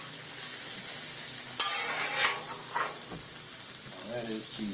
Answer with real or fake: real